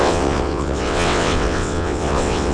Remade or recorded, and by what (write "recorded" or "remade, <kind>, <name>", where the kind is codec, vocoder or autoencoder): remade, vocoder, WaveNeXt